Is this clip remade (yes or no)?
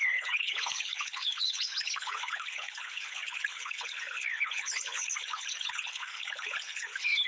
yes